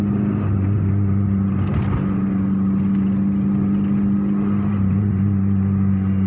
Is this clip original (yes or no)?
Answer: yes